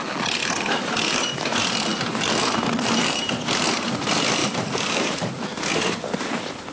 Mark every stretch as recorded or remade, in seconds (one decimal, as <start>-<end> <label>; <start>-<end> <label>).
0.0-0.4 recorded; 0.4-1.3 remade; 1.3-4.4 recorded; 4.4-5.3 remade; 5.3-6.7 recorded